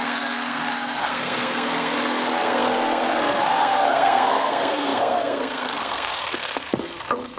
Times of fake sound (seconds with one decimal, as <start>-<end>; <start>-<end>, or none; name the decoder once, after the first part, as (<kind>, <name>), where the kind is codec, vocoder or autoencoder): 0.0-7.4 (codec, SNAC)